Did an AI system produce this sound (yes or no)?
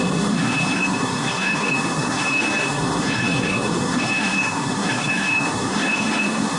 yes